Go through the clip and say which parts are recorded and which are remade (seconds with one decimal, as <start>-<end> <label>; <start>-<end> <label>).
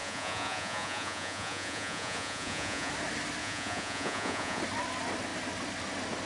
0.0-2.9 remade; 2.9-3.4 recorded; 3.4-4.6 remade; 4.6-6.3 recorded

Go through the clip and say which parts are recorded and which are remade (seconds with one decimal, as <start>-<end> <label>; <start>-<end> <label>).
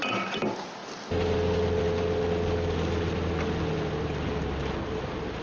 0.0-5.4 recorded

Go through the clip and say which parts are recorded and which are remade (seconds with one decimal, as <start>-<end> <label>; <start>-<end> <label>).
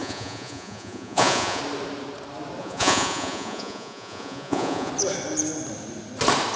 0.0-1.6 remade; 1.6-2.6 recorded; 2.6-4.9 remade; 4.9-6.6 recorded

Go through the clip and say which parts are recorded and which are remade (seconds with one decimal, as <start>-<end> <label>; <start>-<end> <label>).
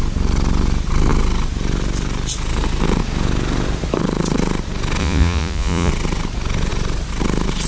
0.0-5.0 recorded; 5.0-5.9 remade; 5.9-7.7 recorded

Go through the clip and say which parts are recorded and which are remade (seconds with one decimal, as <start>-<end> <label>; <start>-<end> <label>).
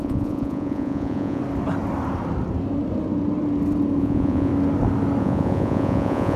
0.0-1.4 remade; 1.4-4.0 recorded; 4.0-4.5 remade; 4.5-5.2 recorded; 5.2-6.4 remade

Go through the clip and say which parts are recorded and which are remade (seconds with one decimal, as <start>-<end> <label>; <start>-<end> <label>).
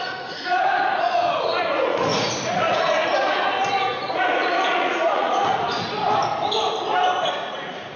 0.0-6.0 remade; 6.0-7.3 recorded; 7.3-8.0 remade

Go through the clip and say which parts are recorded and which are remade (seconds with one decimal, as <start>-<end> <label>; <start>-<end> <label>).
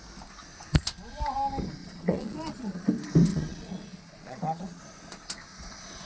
0.0-1.8 recorded; 1.8-2.9 remade; 2.9-3.3 recorded; 3.3-4.8 remade; 4.8-5.5 recorded; 5.5-6.0 remade